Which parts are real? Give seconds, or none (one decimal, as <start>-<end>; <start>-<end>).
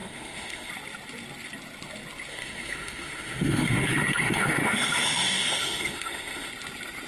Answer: 0.7-2.3; 6.5-7.1